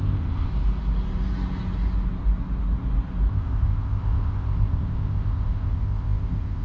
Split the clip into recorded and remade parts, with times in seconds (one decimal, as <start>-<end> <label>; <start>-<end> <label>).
0.0-0.5 remade; 0.5-3.3 recorded; 3.3-6.6 remade